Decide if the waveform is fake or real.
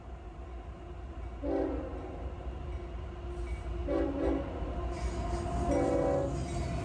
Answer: real